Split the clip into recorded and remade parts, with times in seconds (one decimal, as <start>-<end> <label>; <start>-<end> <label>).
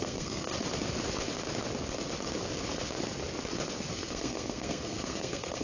0.0-0.5 remade; 0.5-3.9 recorded; 3.9-5.6 remade